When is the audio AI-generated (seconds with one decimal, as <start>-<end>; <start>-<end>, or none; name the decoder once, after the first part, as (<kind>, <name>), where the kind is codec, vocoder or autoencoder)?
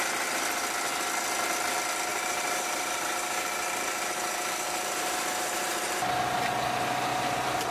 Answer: 2.1-6.0 (vocoder, BigVGAN v2); 7.1-7.7